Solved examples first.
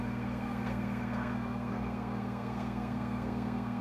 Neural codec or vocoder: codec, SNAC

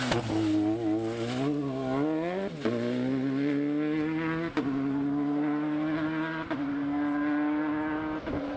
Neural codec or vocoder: none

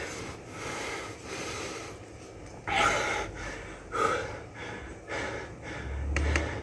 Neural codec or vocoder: none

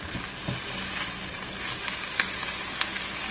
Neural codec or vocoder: none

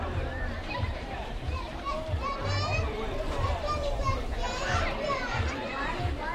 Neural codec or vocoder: vocoder, BigVGAN v2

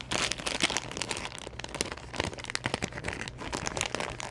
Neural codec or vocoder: none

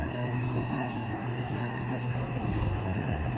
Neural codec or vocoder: codec, SNAC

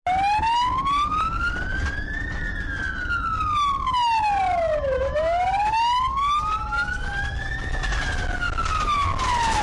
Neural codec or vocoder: none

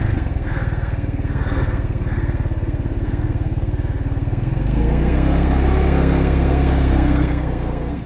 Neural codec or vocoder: codec, SNAC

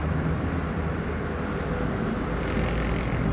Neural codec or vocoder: none